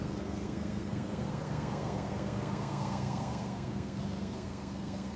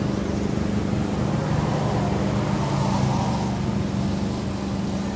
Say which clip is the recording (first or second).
second